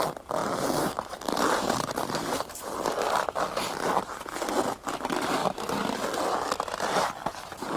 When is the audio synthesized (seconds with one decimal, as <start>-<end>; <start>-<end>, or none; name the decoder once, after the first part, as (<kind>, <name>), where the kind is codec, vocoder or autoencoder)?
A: 0.4-2.8 (vocoder, BigVGAN v2)